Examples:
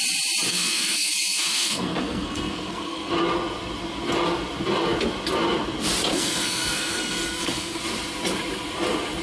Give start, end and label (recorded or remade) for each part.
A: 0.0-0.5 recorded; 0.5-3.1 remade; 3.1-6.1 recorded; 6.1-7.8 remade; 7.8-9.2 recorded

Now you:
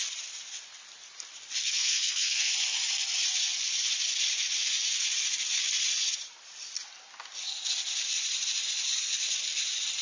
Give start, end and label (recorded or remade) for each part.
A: 0.0-1.6 recorded; 1.6-2.5 remade; 2.5-10.0 recorded

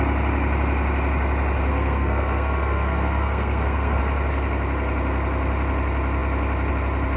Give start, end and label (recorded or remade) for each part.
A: 0.0-1.7 recorded; 1.7-4.0 remade; 4.0-7.2 recorded

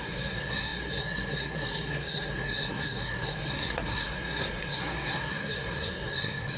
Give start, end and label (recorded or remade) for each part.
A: 0.0-6.6 remade

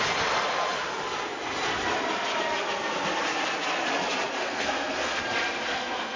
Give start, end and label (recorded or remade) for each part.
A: 0.0-4.4 recorded; 4.4-5.2 remade; 5.2-5.7 recorded; 5.7-6.2 remade